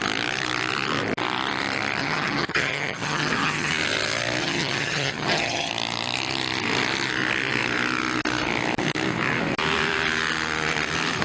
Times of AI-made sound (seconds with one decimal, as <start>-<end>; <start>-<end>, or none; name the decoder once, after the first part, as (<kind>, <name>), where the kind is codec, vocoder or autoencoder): 2.0-3.7 (vocoder, HiFi-GAN); 4.4-5.7